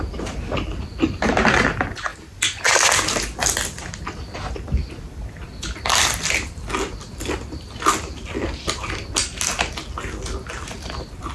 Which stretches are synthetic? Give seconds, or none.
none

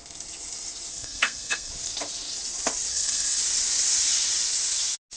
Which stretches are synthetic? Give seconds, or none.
0.9-1.7; 2.9-3.4

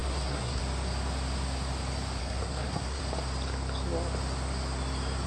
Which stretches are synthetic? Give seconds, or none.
0.0-0.6; 2.2-3.0

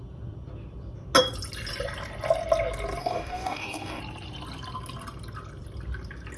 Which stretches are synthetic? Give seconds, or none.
3.0-4.0